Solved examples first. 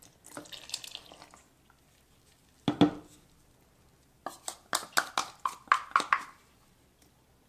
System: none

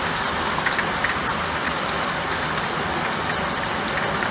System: vocoder, BigVGAN v2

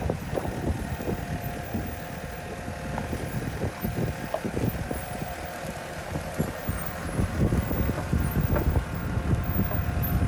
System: none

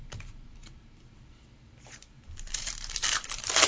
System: vocoder, BigVGAN v2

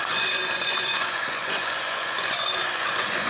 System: vocoder, Vocos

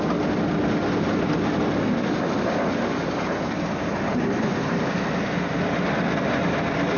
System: none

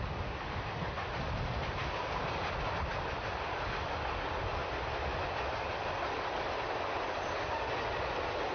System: none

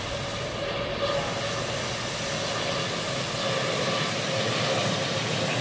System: none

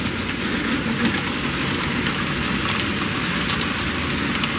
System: none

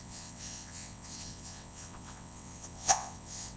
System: vocoder, WaveNeXt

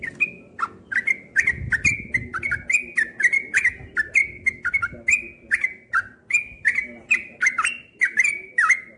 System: none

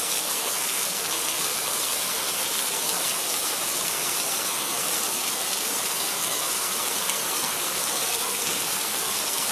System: codec, SNAC